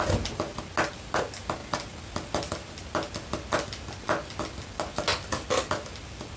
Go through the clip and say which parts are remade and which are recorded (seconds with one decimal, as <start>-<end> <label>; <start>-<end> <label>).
0.0-6.4 recorded